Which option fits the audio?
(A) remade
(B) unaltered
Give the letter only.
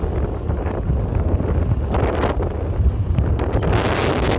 B